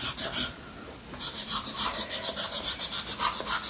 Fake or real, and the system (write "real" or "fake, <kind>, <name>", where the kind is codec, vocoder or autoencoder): real